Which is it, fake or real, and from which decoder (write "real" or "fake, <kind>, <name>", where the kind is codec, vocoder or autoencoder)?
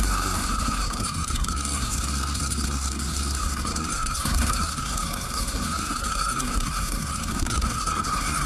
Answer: fake, codec, SNAC